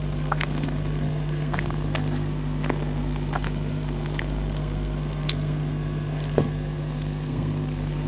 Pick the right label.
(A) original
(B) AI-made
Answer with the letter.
B